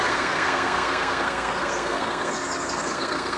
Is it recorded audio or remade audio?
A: remade